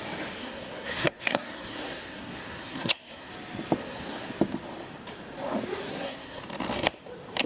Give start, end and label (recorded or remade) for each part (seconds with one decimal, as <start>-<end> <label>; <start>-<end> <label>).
0.0-0.4 recorded; 0.4-3.3 remade; 3.3-3.8 recorded; 3.8-4.3 remade; 4.3-5.8 recorded; 5.8-6.4 remade; 6.4-7.5 recorded